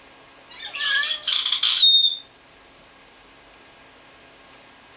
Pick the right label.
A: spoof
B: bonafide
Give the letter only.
B